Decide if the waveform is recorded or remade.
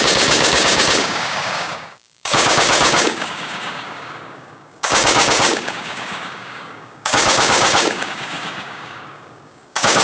remade